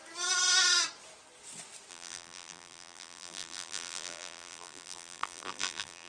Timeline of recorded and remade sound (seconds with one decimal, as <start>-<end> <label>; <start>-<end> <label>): 0.0-1.9 recorded; 1.9-6.1 remade